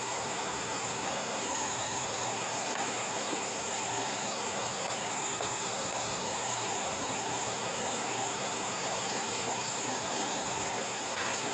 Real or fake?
fake